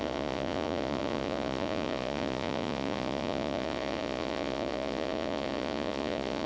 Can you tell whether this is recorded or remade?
remade